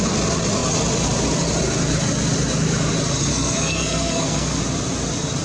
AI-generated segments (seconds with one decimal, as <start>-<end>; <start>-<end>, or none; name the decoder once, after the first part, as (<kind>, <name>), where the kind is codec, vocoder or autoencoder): 3.3-4.6 (codec, SNAC)